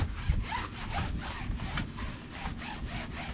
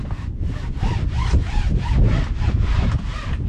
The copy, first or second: second